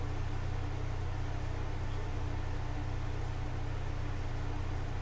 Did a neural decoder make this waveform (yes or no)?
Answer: no